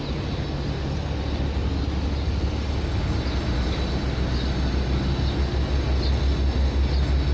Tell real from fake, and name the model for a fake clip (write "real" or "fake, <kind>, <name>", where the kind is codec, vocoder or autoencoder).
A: real